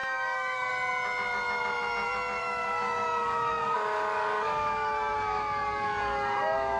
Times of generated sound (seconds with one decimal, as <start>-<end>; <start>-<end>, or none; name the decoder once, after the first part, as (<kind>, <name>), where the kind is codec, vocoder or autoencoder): 0.0-0.7 (codec, DAC); 2.4-6.8